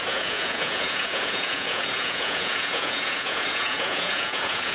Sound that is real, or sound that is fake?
fake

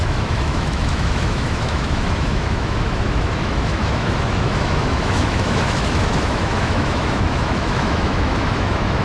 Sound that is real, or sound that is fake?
fake